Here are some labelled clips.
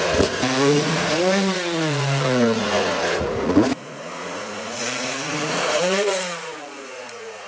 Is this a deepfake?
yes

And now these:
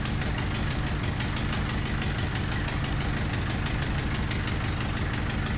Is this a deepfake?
no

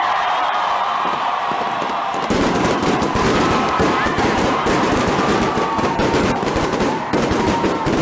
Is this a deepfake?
yes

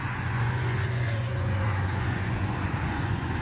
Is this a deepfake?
yes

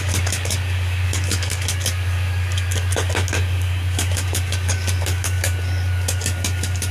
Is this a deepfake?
yes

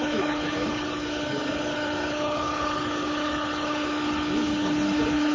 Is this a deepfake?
yes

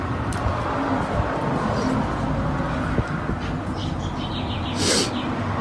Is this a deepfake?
no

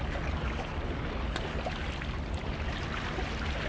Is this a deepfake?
no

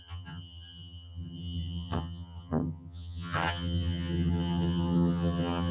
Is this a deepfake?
yes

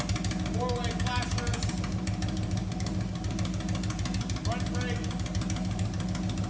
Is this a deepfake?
no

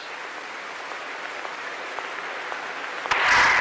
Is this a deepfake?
no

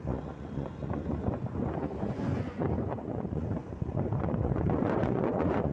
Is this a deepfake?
yes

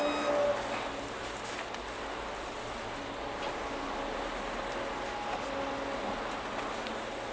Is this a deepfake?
no